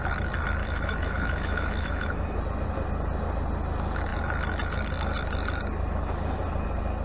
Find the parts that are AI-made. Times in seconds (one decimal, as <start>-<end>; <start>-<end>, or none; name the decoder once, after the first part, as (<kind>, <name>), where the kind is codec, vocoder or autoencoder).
0.6-2.4 (autoencoder, DAC-VAE)